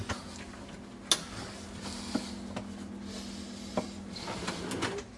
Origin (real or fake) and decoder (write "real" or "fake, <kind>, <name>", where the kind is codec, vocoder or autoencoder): real